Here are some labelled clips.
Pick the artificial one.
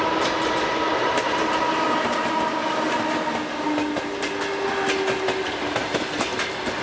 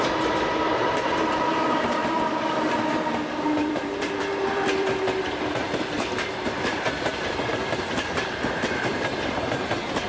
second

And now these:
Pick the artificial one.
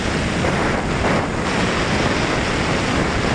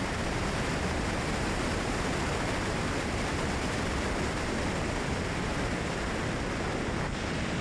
second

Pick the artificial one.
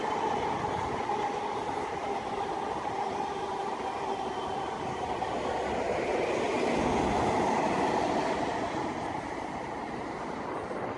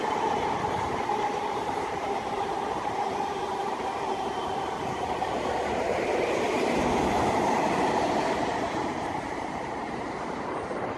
second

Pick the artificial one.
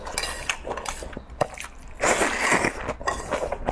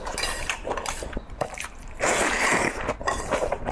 second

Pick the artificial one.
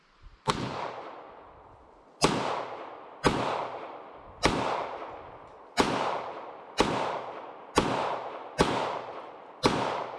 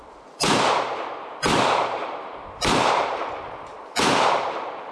second